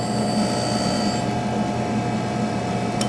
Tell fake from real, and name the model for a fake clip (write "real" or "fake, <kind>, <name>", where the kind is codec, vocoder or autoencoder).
real